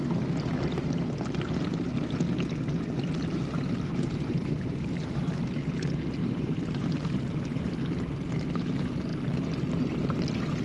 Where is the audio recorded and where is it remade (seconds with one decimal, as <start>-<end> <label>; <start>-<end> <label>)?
0.0-3.9 recorded; 3.9-4.9 remade; 4.9-6.2 recorded; 6.2-7.7 remade; 7.7-10.6 recorded